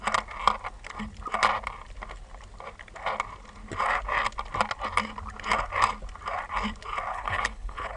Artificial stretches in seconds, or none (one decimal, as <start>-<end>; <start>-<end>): 7.1-8.0